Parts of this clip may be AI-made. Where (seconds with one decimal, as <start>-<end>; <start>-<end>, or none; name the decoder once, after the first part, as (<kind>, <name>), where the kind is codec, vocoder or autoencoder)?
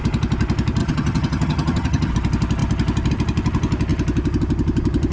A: 0.8-2.1 (vocoder, HiFi-GAN)